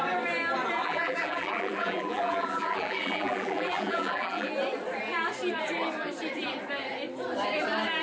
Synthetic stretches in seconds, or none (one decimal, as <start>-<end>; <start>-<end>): 0.8-4.5

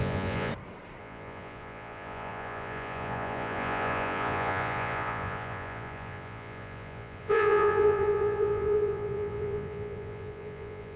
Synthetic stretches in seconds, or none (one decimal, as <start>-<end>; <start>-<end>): 0.0-0.5; 1.0-11.0

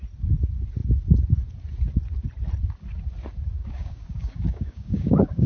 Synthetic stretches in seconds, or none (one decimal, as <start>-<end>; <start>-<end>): 3.6-5.5